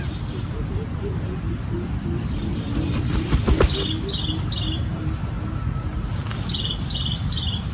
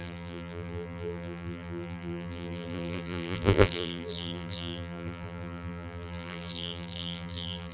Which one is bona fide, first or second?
first